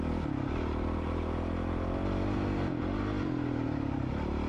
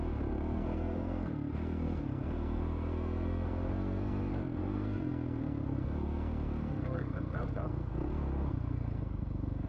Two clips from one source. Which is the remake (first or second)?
second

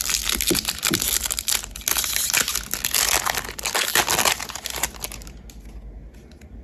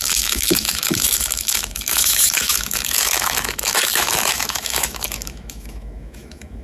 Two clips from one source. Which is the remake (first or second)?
second